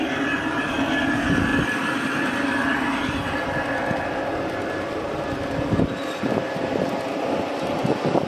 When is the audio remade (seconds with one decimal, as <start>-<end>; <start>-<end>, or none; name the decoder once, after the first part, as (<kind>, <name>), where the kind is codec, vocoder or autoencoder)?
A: 1.5-3.3 (vocoder, BigVGAN v2)